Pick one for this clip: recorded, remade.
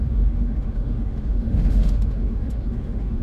remade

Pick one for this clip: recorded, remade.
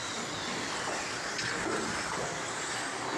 recorded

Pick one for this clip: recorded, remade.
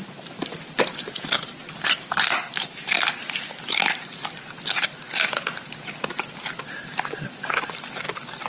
recorded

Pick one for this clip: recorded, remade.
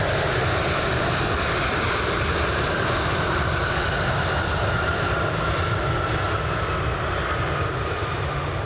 recorded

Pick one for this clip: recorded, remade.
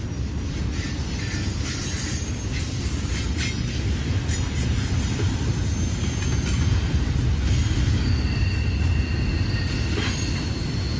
recorded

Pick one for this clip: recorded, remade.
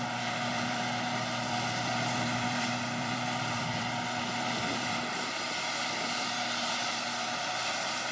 remade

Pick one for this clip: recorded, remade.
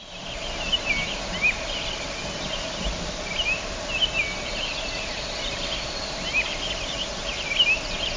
recorded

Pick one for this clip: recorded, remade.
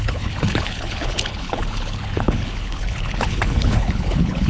remade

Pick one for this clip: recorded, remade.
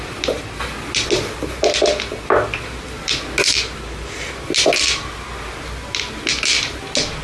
recorded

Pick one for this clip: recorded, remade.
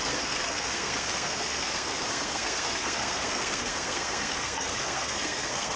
remade